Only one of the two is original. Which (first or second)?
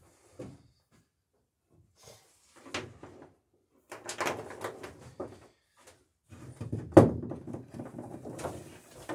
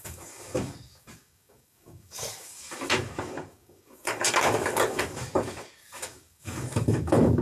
first